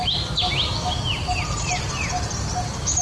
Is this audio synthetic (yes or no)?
no